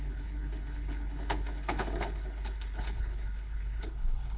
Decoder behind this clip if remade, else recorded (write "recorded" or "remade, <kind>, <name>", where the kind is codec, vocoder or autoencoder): remade, codec, HILCodec